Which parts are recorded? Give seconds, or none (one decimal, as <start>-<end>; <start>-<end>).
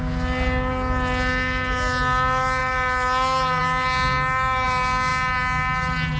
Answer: 0.0-6.2